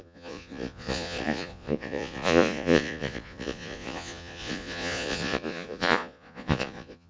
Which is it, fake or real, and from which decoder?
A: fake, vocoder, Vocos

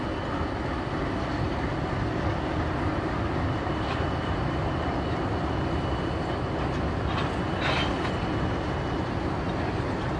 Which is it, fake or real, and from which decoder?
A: real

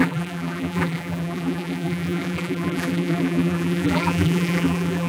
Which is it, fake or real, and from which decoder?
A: fake, vocoder, BigVGAN v2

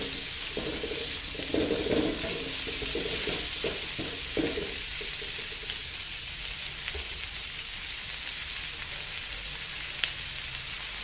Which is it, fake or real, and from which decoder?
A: real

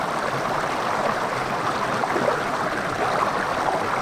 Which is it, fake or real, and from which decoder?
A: real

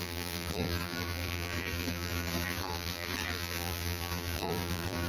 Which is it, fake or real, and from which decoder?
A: fake, vocoder, BigVGAN v2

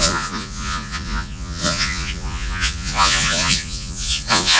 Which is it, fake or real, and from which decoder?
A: fake, vocoder, Vocos